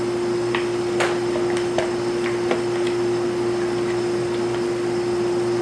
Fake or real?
real